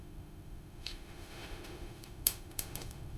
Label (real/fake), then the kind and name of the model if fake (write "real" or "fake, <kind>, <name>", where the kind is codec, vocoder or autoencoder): fake, autoencoder, DAC-VAE